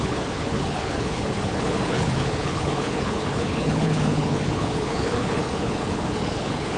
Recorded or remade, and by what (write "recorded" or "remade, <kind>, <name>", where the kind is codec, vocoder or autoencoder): remade, codec, HILCodec